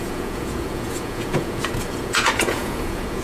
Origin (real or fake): fake